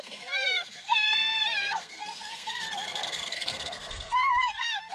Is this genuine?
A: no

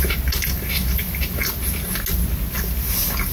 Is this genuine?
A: yes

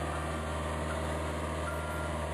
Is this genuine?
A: yes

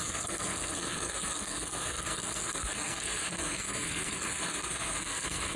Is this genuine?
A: no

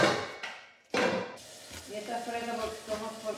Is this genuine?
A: yes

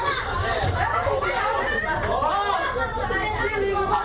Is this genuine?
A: yes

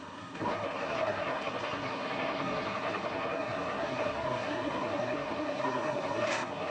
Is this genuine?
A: no